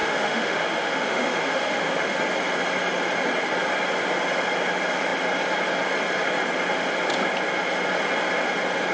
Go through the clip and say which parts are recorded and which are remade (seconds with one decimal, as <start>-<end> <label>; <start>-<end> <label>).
0.0-2.2 remade; 2.2-8.9 recorded